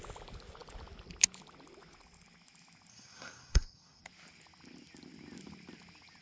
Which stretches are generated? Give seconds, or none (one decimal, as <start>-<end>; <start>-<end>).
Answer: 2.9-4.0